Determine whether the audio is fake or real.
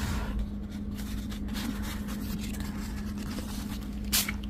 real